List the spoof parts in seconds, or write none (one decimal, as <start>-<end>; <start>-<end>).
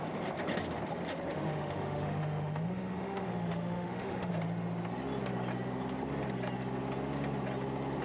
1.3-4.3